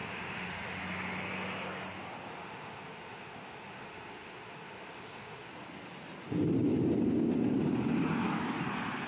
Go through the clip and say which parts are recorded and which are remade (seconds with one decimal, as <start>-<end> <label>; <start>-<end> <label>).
0.0-0.8 remade; 0.8-2.3 recorded; 2.3-5.5 remade; 5.5-9.1 recorded